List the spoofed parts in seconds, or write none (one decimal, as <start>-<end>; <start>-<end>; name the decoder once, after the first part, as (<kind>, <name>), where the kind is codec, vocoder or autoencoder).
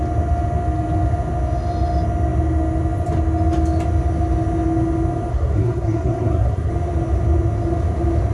5.3-6.7 (codec, SNAC)